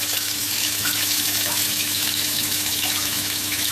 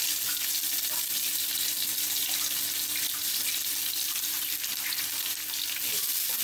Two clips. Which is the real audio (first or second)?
second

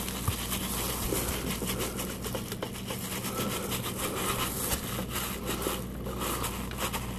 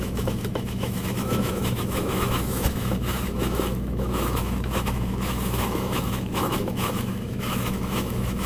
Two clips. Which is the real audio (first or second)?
first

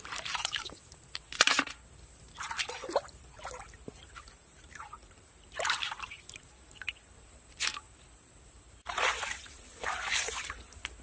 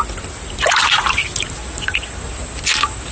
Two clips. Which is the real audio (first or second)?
second